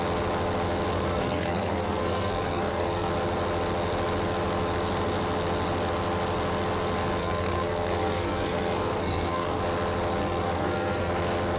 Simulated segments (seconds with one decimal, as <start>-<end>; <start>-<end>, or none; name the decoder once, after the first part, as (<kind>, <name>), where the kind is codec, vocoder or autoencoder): 0.9-3.1 (codec, SNAC); 7.2-9.6; 10.2-11.1